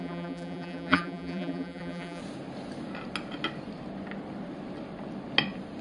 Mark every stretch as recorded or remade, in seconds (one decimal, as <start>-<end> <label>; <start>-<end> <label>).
0.0-2.2 remade; 2.2-5.8 recorded

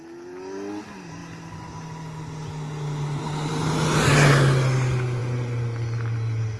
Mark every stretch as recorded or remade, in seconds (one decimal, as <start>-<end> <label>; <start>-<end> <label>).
0.0-6.6 recorded

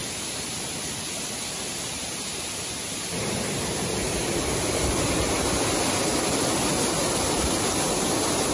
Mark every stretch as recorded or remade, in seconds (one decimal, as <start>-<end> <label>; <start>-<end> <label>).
0.0-8.5 recorded

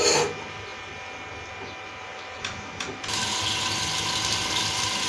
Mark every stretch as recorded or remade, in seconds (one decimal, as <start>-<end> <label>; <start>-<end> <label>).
0.0-5.1 recorded

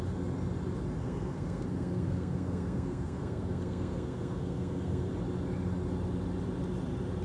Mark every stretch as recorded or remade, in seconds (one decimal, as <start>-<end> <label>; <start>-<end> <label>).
0.0-1.0 recorded; 1.0-5.1 remade; 5.1-7.2 recorded

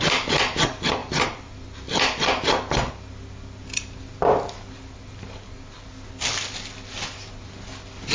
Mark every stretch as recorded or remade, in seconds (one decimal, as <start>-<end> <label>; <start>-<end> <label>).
0.0-1.0 recorded; 1.0-2.9 remade; 2.9-8.1 recorded